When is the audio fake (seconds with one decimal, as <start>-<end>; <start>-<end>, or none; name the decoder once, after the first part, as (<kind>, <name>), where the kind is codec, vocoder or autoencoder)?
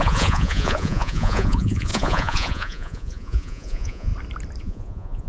0.0-4.1 (vocoder, Vocos); 4.6-5.3